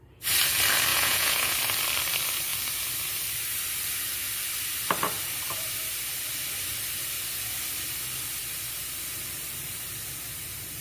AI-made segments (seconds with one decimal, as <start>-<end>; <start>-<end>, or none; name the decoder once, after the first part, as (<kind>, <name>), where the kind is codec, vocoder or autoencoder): 0.9-1.5 (vocoder, Vocos)